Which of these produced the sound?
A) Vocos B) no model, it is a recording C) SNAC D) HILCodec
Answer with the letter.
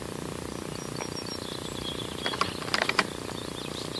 B